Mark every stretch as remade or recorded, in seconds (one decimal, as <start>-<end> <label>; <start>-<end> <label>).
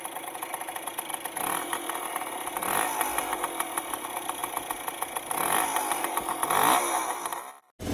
0.0-7.9 recorded